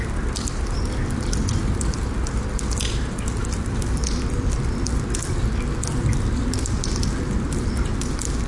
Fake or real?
real